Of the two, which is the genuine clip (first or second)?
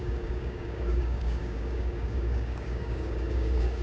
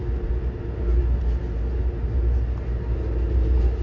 second